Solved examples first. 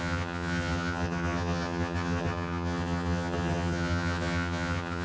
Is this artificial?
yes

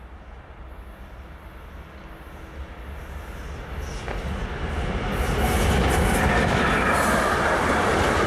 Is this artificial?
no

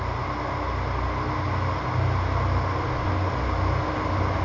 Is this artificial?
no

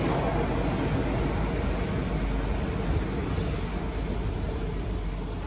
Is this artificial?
no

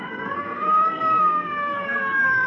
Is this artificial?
yes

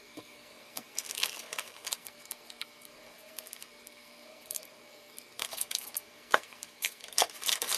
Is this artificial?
yes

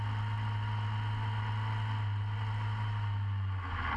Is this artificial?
no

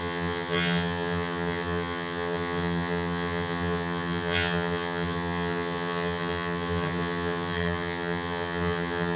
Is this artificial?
yes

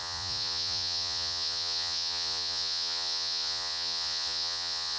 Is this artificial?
yes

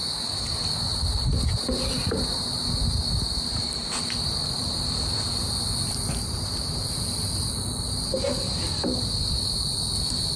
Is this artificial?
no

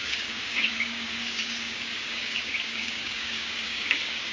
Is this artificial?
yes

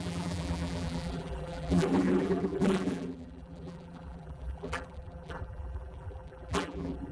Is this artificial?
yes